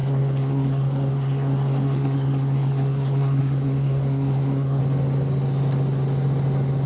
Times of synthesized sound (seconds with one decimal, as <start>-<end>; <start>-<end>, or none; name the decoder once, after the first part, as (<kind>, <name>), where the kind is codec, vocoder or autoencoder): 0.0-4.8 (codec, SNAC)